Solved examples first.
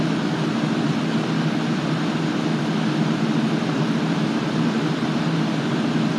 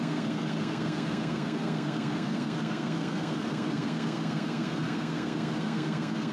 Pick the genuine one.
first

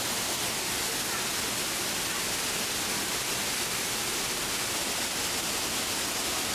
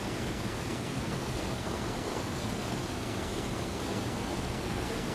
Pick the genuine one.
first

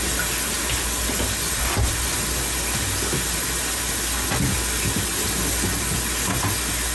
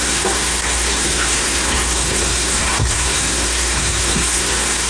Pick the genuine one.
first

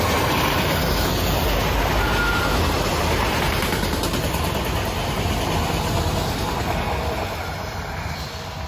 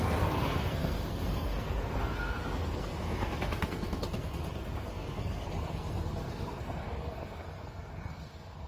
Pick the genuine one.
first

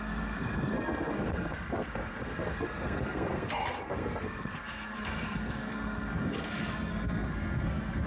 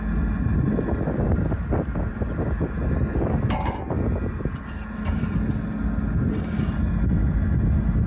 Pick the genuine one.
second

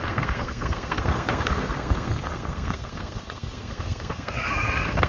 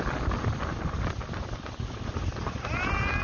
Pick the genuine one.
second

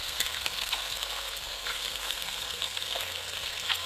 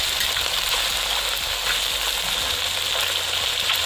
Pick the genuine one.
second